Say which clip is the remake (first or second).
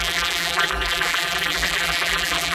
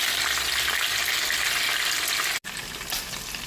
first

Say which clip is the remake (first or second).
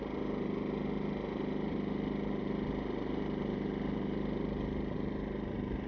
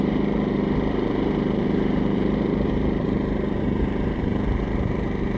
second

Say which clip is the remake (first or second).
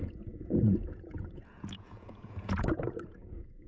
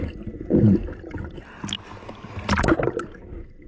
first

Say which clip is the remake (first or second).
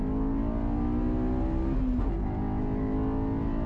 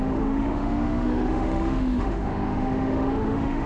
second